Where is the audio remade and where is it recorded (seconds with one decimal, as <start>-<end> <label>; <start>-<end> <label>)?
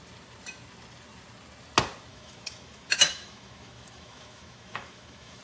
0.0-2.1 recorded; 2.1-5.4 remade